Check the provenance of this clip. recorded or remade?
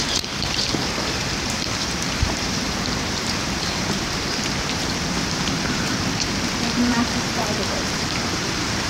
remade